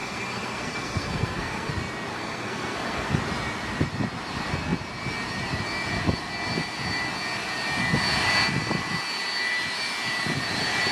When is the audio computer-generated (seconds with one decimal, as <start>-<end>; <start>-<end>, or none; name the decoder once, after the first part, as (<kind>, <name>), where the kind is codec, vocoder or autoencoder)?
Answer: 0.0-1.7 (codec, SNAC); 2.1-3.2